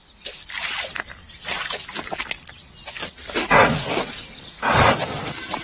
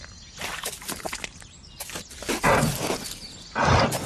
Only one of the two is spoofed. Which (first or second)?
first